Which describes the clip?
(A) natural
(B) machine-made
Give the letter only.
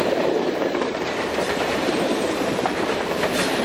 B